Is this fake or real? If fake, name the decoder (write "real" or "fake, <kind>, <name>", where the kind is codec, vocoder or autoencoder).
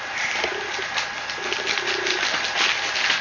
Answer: real